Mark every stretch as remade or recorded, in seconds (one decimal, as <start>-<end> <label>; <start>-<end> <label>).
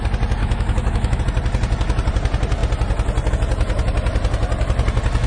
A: 0.0-0.4 recorded; 0.4-1.2 remade; 1.2-5.3 recorded